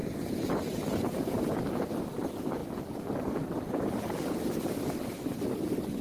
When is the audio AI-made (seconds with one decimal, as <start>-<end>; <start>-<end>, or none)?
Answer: none